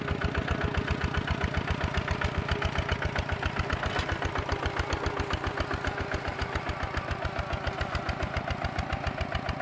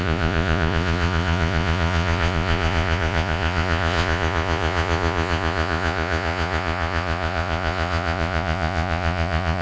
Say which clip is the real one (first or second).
first